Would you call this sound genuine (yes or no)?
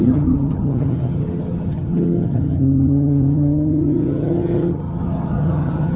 no